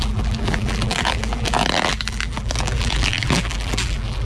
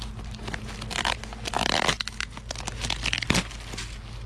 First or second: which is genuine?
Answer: second